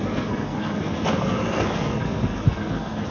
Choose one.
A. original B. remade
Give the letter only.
B